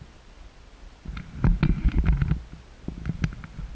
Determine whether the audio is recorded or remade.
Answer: recorded